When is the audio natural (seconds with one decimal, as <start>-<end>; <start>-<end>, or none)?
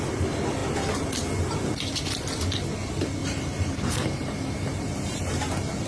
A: 0.0-3.2; 5.4-5.9